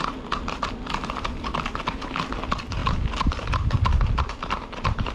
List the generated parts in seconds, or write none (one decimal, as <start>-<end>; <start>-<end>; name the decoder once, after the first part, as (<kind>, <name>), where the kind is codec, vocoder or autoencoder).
none